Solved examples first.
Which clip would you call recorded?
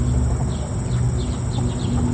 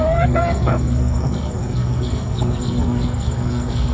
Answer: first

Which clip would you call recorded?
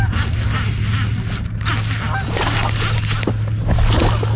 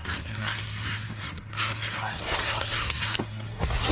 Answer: first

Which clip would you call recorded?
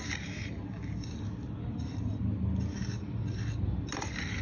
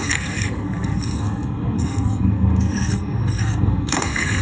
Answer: first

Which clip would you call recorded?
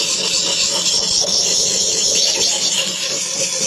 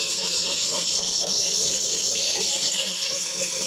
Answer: first